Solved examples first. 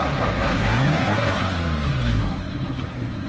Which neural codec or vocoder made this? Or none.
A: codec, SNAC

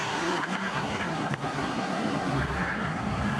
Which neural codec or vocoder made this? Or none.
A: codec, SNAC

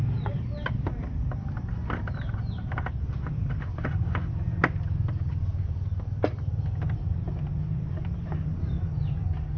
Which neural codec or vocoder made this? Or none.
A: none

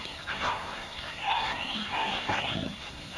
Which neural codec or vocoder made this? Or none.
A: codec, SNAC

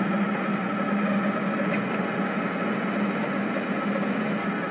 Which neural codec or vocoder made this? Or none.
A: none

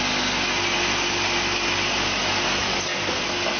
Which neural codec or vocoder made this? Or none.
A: none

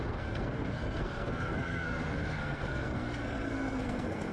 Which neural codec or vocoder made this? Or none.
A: codec, SNAC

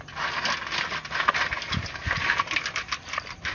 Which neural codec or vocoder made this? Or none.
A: none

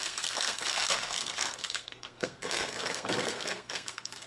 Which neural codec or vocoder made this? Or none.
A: codec, SNAC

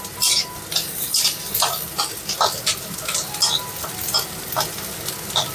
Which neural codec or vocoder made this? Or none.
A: none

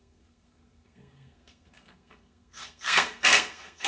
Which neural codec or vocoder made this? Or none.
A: codec, SNAC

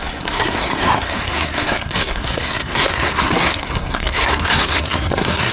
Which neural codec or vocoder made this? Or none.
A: codec, SNAC